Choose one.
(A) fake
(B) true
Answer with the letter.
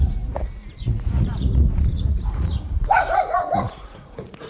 A